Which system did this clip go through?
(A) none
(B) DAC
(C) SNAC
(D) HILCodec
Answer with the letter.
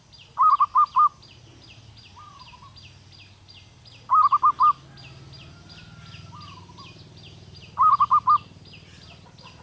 A